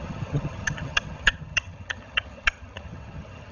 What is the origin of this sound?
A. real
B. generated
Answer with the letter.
B